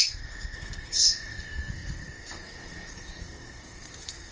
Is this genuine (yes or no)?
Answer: no